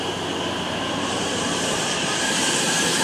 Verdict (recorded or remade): remade